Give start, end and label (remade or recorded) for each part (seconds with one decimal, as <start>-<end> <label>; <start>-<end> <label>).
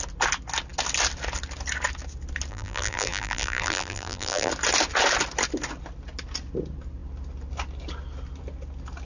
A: 0.0-2.5 recorded; 2.5-4.5 remade; 4.5-9.0 recorded